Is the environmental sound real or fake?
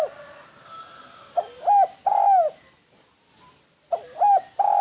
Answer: real